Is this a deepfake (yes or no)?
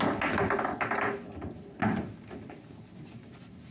no